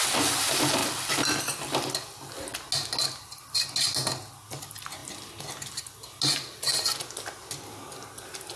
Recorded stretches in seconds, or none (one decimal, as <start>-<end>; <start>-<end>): 0.0-8.6